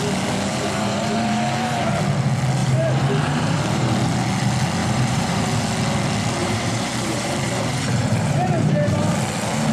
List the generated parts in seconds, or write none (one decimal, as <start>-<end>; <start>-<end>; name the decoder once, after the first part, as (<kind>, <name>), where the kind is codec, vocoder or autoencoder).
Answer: 0.5-1.9 (vocoder, BigVGAN v2); 2.6-3.9; 4.8-5.4; 6.4-9.1